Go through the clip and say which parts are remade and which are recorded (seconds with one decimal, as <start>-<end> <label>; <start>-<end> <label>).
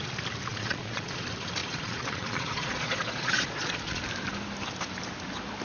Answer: 0.0-0.5 recorded; 0.5-1.2 remade; 1.2-1.6 recorded; 1.6-4.0 remade; 4.0-5.6 recorded